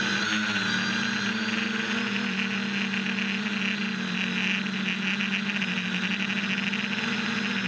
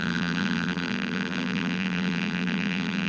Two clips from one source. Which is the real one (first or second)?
first